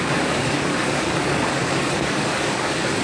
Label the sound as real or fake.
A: fake